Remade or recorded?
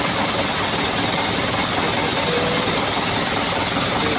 recorded